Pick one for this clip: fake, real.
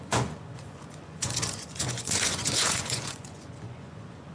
fake